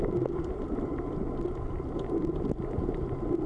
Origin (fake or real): real